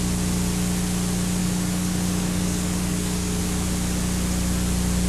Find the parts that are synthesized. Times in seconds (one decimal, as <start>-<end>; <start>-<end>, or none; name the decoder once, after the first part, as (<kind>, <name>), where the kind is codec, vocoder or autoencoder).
1.4-3.4 (codec, DAC)